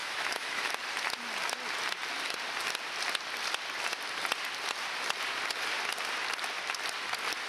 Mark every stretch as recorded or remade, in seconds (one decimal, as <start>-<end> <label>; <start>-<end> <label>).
0.0-0.7 remade; 0.7-7.5 recorded